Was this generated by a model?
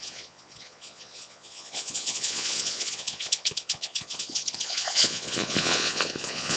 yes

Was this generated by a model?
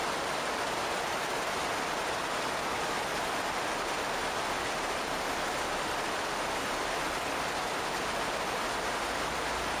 no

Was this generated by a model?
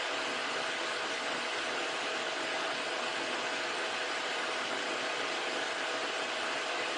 no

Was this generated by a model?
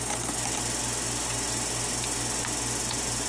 no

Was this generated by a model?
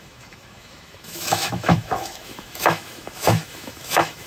yes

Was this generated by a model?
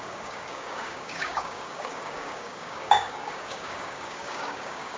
yes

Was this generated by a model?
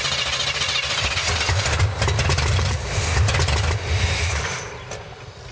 no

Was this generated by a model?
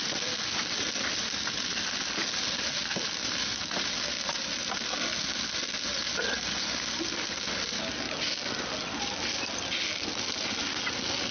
no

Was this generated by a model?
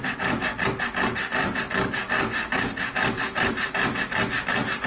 no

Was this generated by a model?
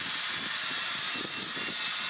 no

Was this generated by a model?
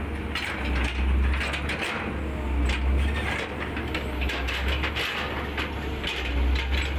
no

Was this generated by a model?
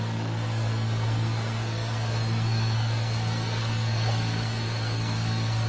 yes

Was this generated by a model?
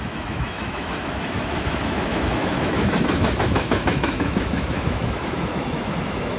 yes